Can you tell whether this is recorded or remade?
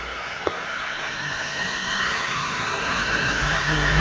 remade